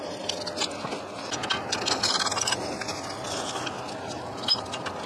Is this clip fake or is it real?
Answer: real